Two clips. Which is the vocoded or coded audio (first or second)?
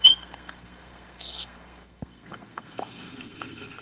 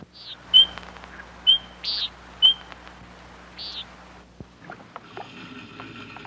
first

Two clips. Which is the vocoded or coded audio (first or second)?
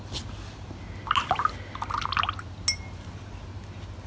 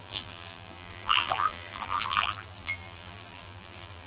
second